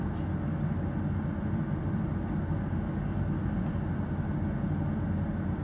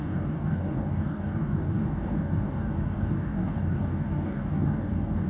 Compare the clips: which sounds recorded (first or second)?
first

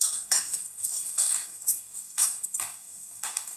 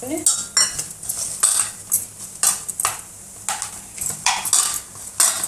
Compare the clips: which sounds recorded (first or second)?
second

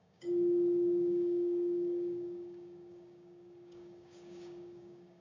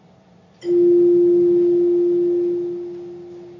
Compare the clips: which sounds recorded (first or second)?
second